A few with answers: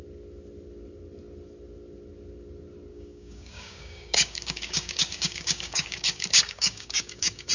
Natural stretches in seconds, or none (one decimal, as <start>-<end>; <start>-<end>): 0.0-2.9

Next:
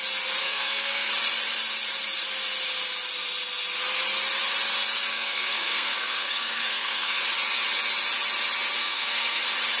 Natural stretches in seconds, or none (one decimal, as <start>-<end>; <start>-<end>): 0.0-0.4; 1.1-5.1; 7.2-8.8; 9.4-9.8

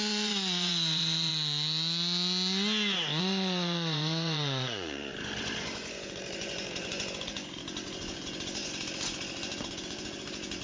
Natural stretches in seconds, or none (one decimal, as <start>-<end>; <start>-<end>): 1.3-3.2

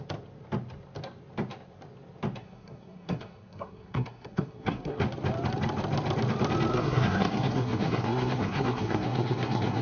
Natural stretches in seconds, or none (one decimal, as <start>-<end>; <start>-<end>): 0.0-2.4; 5.0-6.7

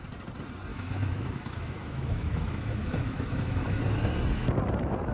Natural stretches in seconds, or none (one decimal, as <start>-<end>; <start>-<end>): 0.0-0.7; 3.8-5.1

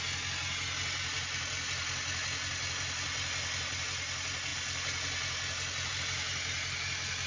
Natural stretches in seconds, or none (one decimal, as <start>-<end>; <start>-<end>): 0.0-7.3

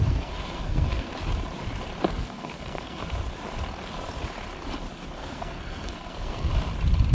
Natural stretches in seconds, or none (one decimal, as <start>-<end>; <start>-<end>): 1.1-2.1; 3.0-5.2; 6.5-7.1

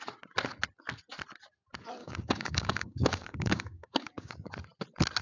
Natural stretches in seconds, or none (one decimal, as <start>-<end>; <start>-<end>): 0.0-2.0; 4.5-5.2